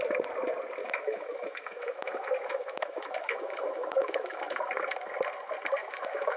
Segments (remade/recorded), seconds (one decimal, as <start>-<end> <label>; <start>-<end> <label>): 0.0-0.8 recorded; 0.8-4.6 remade; 4.6-5.8 recorded; 5.8-6.4 remade